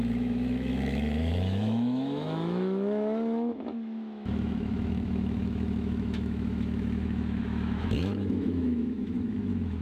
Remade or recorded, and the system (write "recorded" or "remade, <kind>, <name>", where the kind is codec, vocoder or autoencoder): remade, autoencoder, DAC-VAE